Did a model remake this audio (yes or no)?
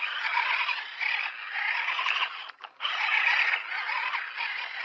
no